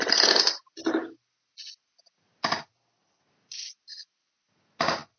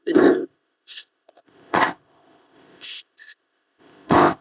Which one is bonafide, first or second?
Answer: first